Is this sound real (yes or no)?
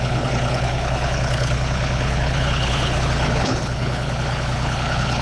no